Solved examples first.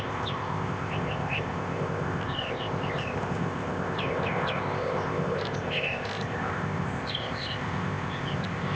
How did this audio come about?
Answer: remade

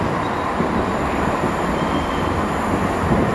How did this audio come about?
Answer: recorded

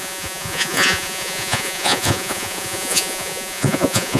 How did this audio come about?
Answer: remade